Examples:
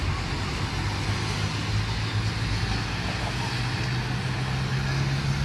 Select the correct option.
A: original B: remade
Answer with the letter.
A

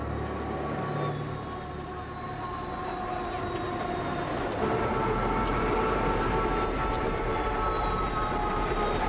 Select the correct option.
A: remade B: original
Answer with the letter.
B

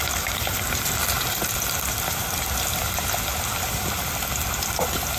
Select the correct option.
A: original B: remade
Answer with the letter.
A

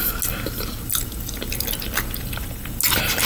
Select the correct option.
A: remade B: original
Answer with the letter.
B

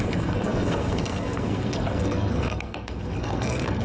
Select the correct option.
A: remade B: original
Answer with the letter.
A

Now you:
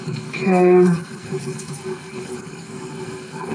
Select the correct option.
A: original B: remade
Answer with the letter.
B